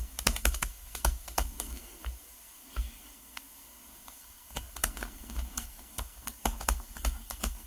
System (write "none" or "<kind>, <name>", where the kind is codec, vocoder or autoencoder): codec, SNAC